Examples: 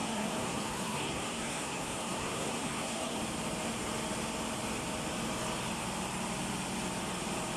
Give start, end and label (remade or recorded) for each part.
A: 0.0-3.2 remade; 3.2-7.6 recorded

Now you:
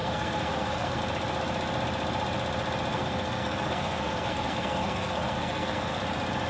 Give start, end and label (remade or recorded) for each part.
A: 0.0-1.0 remade; 1.0-2.9 recorded; 2.9-6.0 remade; 6.0-6.5 recorded